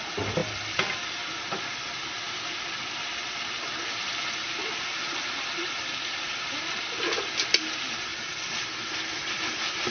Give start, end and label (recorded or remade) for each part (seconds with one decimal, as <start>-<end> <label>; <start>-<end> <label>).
0.0-9.9 recorded